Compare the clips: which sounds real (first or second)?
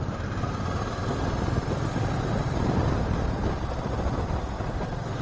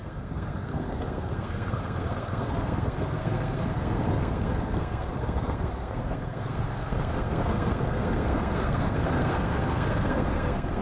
first